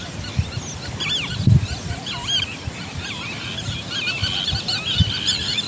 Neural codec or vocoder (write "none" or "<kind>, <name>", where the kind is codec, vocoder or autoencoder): none